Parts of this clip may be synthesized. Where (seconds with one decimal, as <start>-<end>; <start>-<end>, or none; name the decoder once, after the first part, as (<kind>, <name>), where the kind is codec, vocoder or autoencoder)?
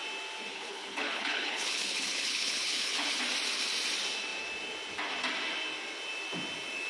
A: 0.5-3.2 (codec, HILCodec)